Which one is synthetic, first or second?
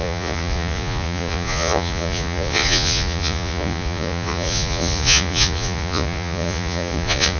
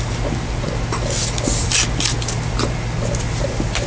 first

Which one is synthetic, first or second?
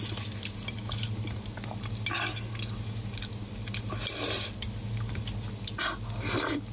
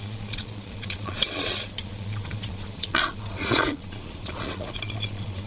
second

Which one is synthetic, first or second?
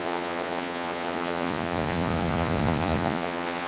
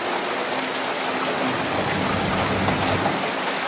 first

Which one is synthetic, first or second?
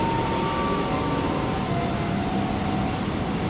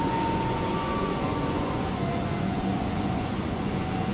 second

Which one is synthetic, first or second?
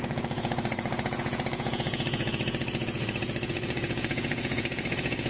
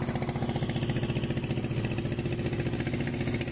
first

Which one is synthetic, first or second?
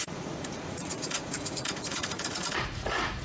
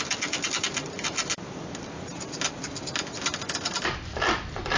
first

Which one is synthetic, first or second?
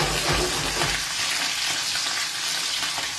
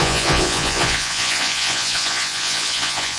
second